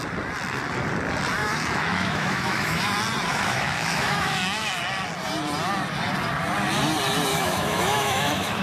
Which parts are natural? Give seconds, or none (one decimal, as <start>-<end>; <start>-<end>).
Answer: 0.0-1.4; 2.9-3.3; 4.7-7.3